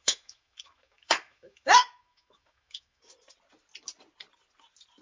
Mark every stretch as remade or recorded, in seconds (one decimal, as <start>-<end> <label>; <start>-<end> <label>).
0.0-3.0 remade; 3.0-5.0 recorded